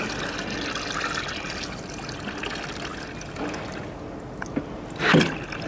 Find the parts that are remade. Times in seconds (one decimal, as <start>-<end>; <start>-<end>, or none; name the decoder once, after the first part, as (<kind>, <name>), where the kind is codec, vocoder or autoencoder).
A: none